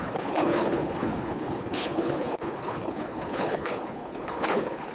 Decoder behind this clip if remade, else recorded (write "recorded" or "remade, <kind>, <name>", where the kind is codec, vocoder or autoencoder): remade, codec, HILCodec